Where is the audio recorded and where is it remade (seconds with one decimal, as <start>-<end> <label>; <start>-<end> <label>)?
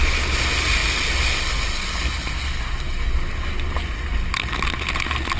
0.0-5.4 recorded